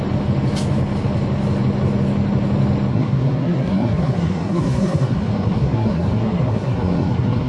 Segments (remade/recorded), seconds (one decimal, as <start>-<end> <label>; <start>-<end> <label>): 0.0-2.9 recorded; 2.9-7.5 remade